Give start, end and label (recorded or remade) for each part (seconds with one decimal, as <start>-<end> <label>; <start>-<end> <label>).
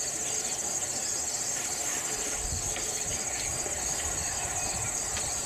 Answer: 0.0-5.5 recorded